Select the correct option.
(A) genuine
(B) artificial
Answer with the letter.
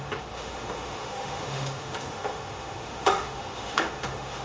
B